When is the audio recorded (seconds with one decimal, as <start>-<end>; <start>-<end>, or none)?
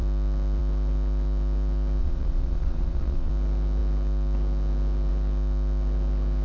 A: 0.0-2.0; 3.3-6.4